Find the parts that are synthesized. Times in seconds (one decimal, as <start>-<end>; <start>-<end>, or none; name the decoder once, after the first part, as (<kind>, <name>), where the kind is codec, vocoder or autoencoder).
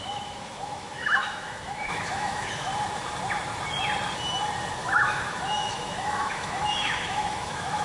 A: 0.0-2.7 (autoencoder, DAC-VAE); 4.7-7.8